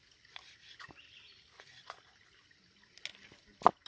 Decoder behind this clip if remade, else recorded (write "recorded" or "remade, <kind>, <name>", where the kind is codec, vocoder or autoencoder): recorded